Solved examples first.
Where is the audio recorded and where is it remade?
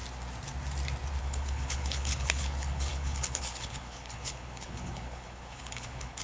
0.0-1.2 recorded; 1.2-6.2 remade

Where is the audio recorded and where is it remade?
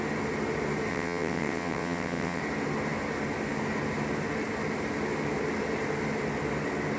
0.0-0.9 recorded; 0.9-2.4 remade; 2.4-7.0 recorded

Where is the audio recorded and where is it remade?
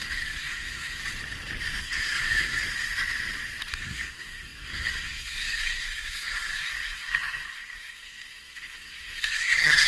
0.0-1.0 remade; 1.0-1.8 recorded; 1.8-2.6 remade; 2.6-3.7 recorded; 3.7-9.9 remade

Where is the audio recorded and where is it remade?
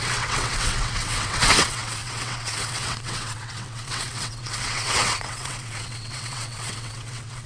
0.0-7.5 remade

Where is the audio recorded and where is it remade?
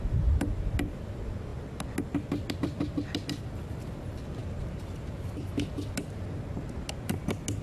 0.0-7.6 recorded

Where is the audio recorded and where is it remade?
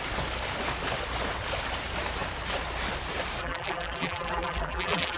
0.0-3.4 recorded; 3.4-5.2 remade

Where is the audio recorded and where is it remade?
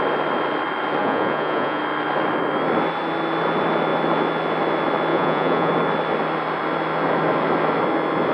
0.0-1.0 recorded; 1.0-1.8 remade; 1.8-5.1 recorded; 5.1-5.7 remade; 5.7-8.3 recorded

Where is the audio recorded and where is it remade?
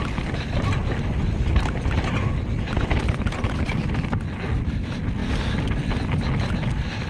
0.0-0.8 remade; 0.8-1.5 recorded; 1.5-5.2 remade; 5.2-7.1 recorded